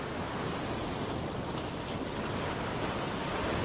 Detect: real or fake real